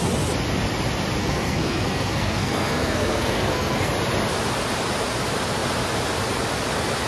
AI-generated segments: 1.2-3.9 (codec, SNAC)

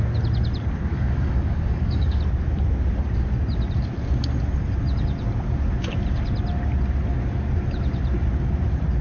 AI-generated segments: 0.9-2.2 (codec, DAC)

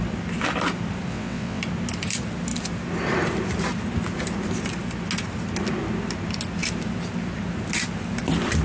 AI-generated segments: 1.1-1.6 (vocoder, WaveNeXt)

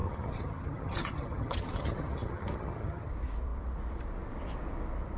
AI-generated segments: 0.0-3.1 (vocoder, HiFi-GAN)

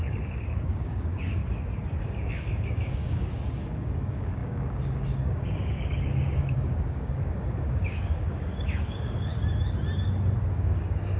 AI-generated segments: 0.0-1.4 (codec, DAC); 2.0-9.3; 10.5-11.2

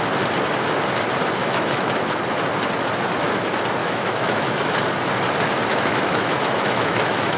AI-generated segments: 1.4-2.2 (autoencoder, DAC-VAE); 3.8-4.7; 5.7-7.4

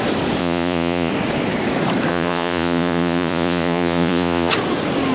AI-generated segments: 0.4-1.1 (vocoder, Vocos); 2.1-4.5